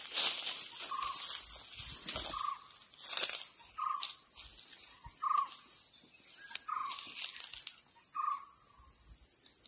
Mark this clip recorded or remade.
recorded